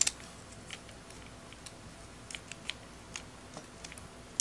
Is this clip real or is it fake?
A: real